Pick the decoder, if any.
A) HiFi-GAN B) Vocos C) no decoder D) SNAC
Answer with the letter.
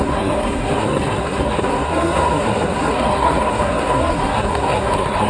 D